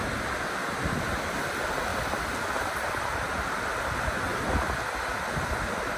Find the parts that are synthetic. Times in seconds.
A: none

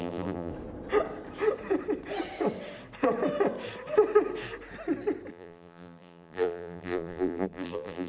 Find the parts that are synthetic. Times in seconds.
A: 0.0-0.5 (vocoder, BigVGAN v2); 5.3-8.1

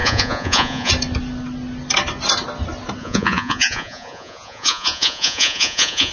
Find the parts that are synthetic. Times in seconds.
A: 0.0-0.9 (vocoder, Vocos); 3.0-6.1

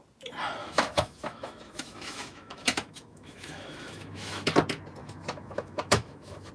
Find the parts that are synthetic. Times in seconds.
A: 0.6-4.5 (autoencoder, DAC-VAE); 5.0-6.5